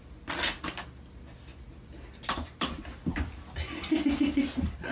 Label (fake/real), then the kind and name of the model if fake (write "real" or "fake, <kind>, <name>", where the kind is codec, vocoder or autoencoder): real